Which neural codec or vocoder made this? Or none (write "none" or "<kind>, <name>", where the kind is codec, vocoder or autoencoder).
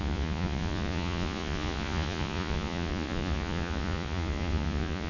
vocoder, Vocos